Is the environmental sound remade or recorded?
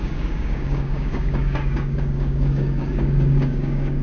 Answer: remade